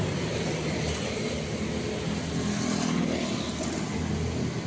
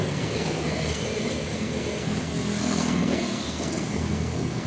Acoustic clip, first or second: first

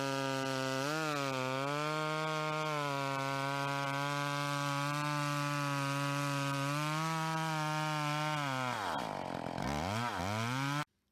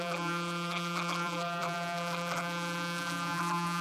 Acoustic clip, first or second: first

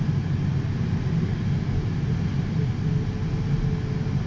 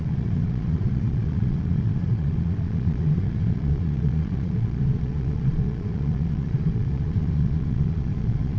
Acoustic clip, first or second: first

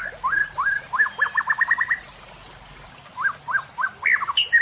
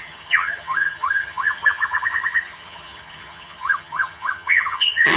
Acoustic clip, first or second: first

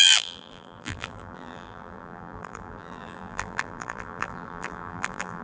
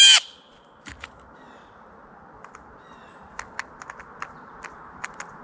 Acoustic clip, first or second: second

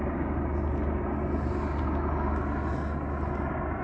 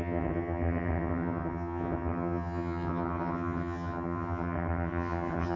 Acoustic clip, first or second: first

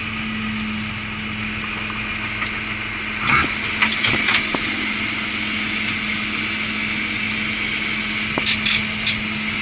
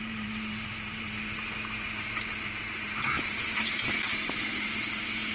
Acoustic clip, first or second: first